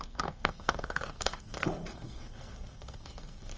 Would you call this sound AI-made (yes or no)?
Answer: yes